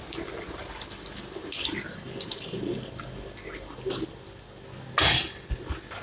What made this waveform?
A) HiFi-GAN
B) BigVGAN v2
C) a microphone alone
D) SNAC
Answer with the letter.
C